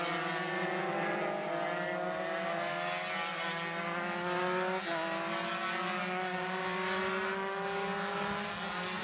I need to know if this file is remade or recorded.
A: recorded